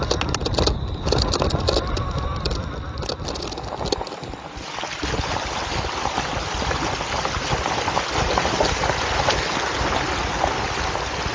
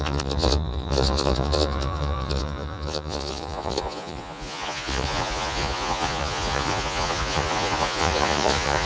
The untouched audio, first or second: first